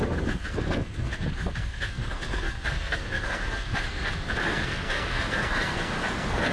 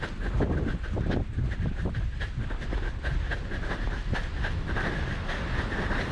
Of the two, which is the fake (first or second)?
first